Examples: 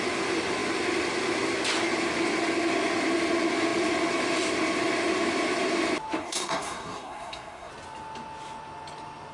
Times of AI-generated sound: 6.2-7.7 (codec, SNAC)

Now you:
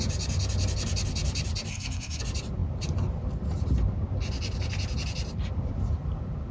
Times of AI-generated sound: 1.7-2.2 (codec, SNAC)

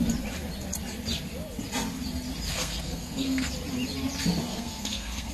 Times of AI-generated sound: 2.5-3.5 (codec, SNAC); 4.5-5.3

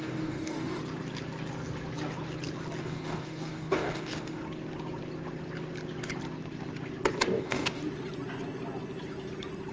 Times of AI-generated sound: 0.0-0.8 (codec, DAC); 2.8-4.4; 7.3-7.8

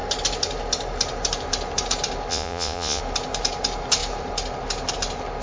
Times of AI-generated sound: 2.3-3.0 (vocoder, Vocos)

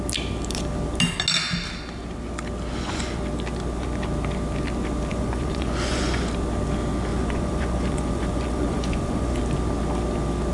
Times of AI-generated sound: 2.7-3.2 (vocoder, Vocos); 5.1-6.3; 7.1-9.4

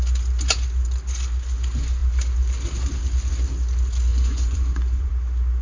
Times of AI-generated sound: 4.1-5.1 (vocoder, Vocos)

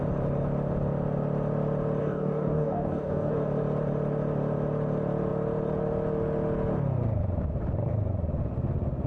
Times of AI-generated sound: 2.0-3.3 (codec, DAC)